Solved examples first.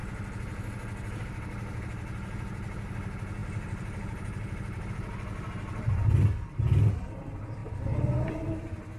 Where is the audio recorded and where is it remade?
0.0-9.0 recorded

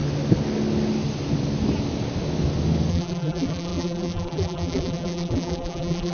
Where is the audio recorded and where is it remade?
0.0-2.9 recorded; 2.9-6.1 remade

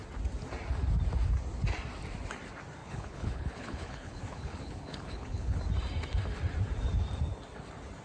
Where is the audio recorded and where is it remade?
0.0-2.8 recorded; 2.8-5.6 remade; 5.6-8.0 recorded

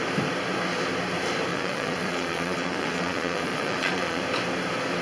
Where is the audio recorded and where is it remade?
0.0-1.5 recorded; 1.5-4.2 remade; 4.2-5.0 recorded

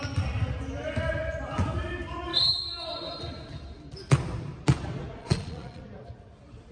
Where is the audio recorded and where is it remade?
0.0-5.2 recorded; 5.2-5.8 remade; 5.8-6.7 recorded

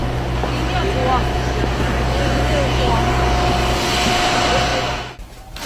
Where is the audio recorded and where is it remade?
0.0-5.7 recorded

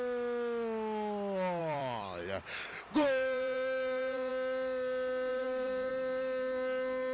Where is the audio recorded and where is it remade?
0.0-1.6 recorded; 1.6-4.3 remade; 4.3-5.3 recorded; 5.3-5.9 remade; 5.9-7.1 recorded